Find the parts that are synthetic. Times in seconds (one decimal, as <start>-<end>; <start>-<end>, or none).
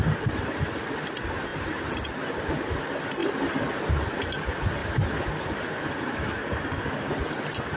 6.4-7.1